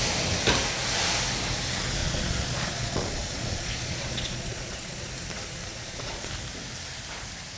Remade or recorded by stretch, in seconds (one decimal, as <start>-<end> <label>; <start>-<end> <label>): 0.0-2.0 recorded; 2.0-5.1 remade; 5.1-5.7 recorded; 5.7-6.3 remade; 6.3-7.6 recorded